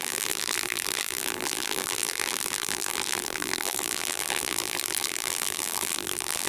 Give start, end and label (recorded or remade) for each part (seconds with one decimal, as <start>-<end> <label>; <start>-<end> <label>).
0.0-6.5 remade